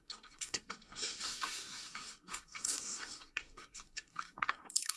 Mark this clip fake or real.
fake